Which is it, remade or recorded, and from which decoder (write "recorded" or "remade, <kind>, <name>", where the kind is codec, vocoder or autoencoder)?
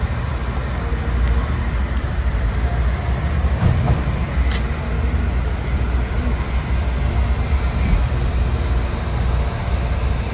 recorded